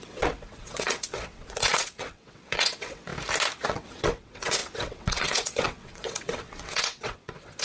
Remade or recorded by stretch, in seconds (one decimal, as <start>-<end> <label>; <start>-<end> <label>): 0.0-3.1 remade; 3.1-3.7 recorded; 3.7-7.6 remade